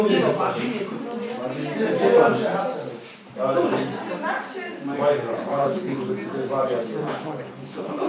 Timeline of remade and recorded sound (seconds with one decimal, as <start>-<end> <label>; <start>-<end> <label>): 0.0-5.3 recorded; 5.3-6.1 remade; 6.1-7.0 recorded; 7.0-8.1 remade